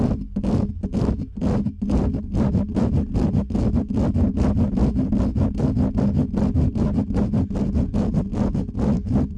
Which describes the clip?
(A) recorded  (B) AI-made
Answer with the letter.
A